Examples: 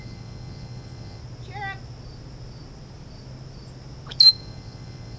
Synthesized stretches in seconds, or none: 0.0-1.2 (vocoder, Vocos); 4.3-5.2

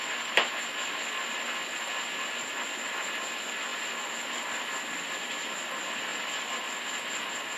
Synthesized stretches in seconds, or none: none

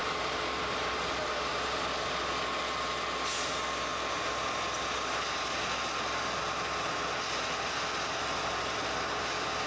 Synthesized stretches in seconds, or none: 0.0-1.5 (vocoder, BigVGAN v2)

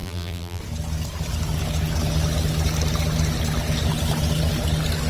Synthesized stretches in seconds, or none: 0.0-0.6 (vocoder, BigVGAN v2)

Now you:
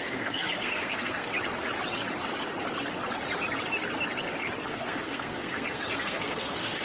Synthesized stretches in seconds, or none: 0.0-1.3 (codec, SNAC); 4.7-6.8

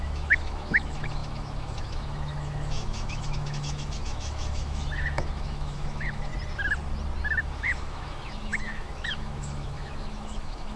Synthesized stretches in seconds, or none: 0.0-6.3 (autoencoder, DAC-VAE); 7.4-10.8

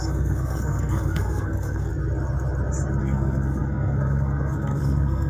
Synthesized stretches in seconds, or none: 0.0-1.9 (codec, SNAC); 3.0-5.3